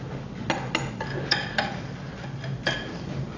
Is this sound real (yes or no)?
yes